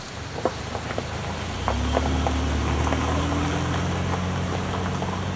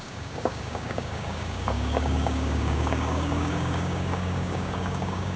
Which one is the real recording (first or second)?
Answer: first